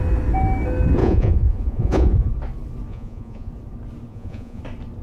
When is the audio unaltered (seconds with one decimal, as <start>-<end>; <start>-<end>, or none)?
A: 0.0-1.0; 2.3-2.9; 3.5-4.1; 4.6-5.0